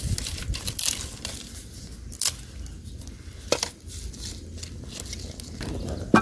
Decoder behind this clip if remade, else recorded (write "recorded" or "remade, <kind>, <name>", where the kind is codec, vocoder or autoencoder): recorded